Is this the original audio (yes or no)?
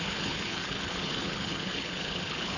no